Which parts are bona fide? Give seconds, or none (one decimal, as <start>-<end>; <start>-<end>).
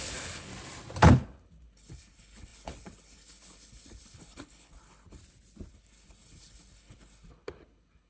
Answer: 0.5-1.0; 5.2-5.7